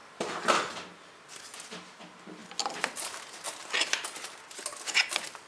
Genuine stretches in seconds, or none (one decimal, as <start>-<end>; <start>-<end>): 0.0-5.5